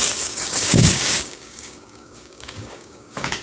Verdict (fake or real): fake